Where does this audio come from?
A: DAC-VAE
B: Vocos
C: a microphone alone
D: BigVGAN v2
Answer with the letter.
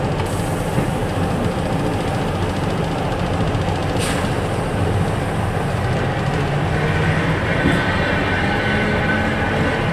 C